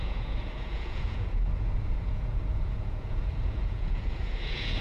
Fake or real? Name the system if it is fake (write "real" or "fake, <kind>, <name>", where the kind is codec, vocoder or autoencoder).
fake, vocoder, Vocos